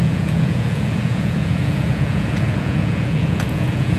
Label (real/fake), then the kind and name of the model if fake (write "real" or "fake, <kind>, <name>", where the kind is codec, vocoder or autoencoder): fake, vocoder, Vocos